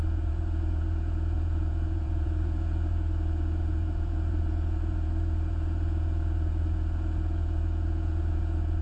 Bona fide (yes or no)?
no